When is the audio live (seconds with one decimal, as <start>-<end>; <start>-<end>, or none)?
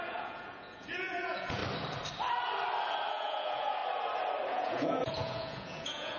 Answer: 1.6-3.1; 3.8-4.5